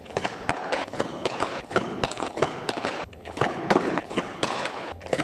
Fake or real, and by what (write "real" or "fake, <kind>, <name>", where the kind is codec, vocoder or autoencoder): fake, codec, HILCodec